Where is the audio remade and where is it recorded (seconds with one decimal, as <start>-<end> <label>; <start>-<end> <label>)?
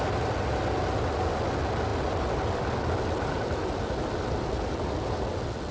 0.0-5.7 recorded